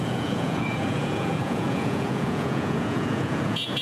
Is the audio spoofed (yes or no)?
yes